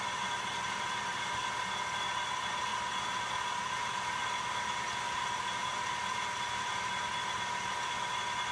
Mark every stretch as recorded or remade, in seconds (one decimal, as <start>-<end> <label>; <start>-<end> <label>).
0.0-8.5 recorded